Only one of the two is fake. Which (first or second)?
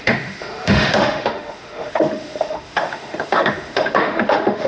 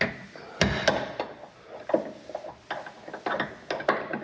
first